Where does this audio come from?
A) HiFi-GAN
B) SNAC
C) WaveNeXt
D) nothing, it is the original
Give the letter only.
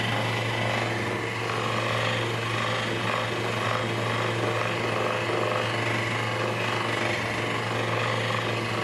D